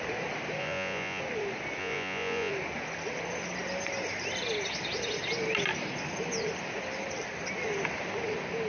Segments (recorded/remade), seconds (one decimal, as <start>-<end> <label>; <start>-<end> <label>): 0.0-0.6 recorded; 0.6-1.2 remade; 1.2-1.8 recorded; 1.8-2.5 remade; 2.5-8.7 recorded